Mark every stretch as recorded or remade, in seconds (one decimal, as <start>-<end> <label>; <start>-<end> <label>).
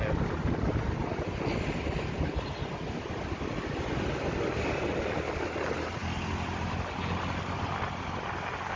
0.0-8.8 recorded